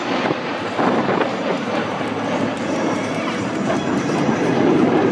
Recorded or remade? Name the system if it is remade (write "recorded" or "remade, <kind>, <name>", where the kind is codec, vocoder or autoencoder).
remade, vocoder, BigVGAN v2